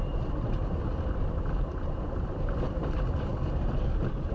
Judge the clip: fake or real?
fake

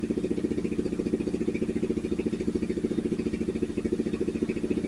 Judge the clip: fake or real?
real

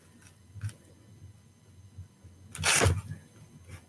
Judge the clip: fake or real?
real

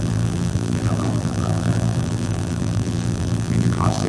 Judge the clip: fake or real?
fake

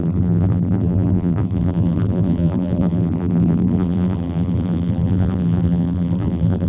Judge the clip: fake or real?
fake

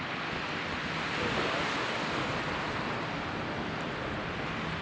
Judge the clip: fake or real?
real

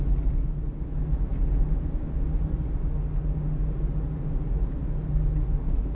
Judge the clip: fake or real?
real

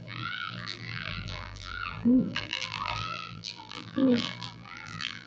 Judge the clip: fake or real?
fake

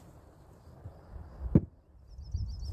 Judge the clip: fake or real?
real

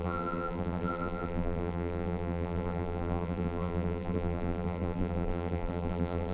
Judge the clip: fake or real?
fake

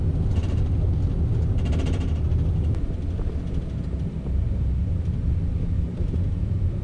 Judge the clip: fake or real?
real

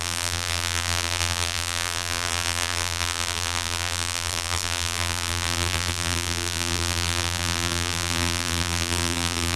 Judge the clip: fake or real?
fake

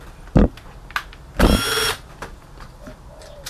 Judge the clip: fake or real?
real